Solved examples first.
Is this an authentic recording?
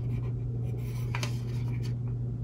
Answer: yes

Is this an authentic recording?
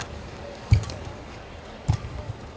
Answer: no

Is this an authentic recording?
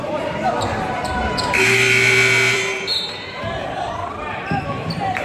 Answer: no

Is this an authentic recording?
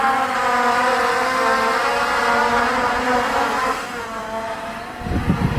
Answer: yes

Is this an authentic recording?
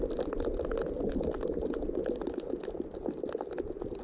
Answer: yes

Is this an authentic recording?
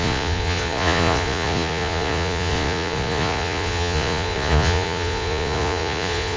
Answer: no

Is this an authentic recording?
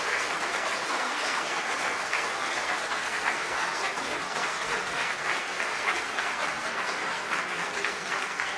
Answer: no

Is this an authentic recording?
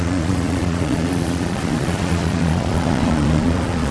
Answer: no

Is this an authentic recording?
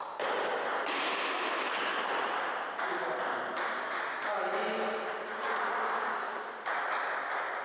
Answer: yes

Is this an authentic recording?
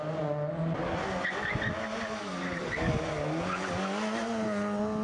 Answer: yes